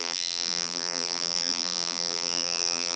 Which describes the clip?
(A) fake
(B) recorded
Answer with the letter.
A